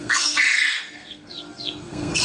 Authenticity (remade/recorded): remade